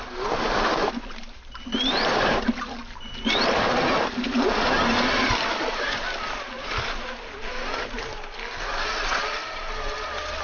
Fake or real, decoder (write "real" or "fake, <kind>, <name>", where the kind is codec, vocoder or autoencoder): real